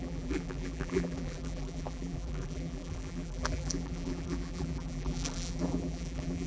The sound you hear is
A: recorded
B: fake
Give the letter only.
B